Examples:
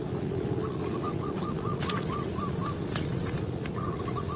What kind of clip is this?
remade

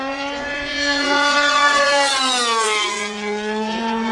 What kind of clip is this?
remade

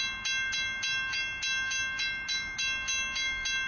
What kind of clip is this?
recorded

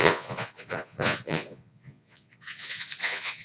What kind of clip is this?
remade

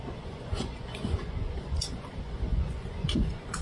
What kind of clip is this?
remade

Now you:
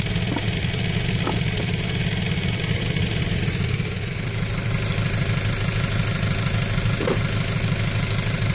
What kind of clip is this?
recorded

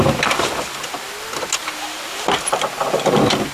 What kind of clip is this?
recorded